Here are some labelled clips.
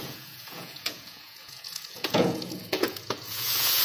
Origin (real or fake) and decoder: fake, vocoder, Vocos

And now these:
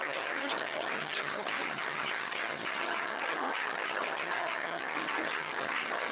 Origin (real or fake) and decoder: fake, vocoder, HiFi-GAN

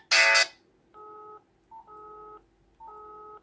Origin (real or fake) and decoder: real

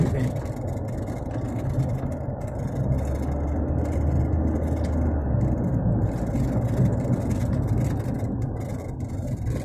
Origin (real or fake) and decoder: real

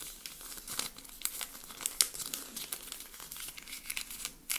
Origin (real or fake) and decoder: real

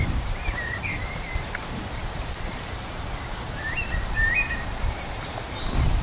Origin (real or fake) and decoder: fake, vocoder, BigVGAN v2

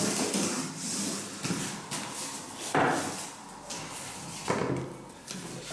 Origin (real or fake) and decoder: real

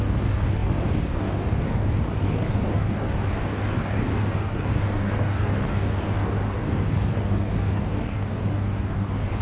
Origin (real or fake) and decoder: fake, codec, DAC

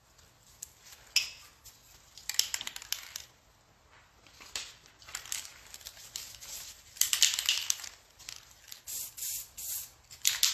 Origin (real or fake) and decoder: real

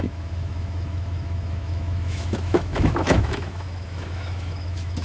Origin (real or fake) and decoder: fake, autoencoder, DAC-VAE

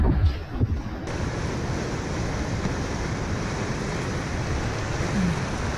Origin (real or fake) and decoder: real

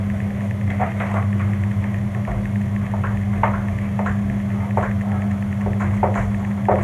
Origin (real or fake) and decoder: real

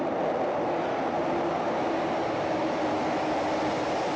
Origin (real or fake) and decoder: real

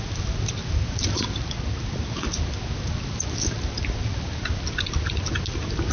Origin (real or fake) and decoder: real